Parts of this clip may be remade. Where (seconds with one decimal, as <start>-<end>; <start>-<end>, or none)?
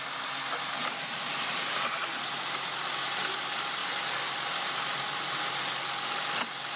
none